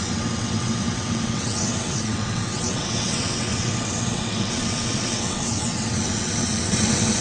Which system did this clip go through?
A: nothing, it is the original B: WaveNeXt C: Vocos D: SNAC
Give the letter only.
B